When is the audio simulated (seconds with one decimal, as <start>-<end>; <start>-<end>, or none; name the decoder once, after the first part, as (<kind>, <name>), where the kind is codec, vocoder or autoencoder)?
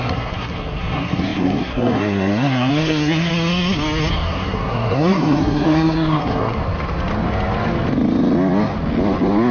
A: 0.0-3.3 (codec, SNAC); 4.1-6.6